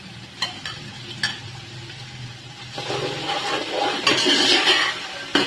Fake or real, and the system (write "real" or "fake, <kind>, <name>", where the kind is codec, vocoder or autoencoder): real